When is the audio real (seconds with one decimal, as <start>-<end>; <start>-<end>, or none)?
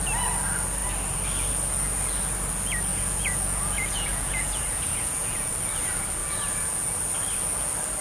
0.0-2.9; 5.5-6.2; 7.0-8.0